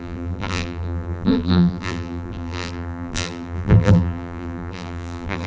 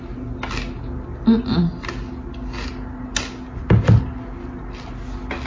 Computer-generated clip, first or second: first